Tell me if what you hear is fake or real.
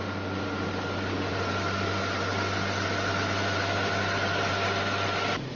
real